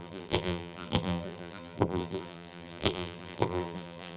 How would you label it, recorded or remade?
remade